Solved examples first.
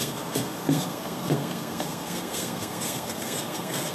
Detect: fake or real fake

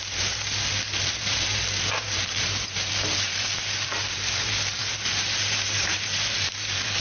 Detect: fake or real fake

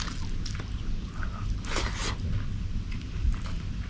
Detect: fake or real real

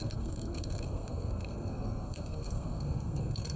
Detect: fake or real fake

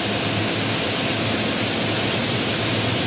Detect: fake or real real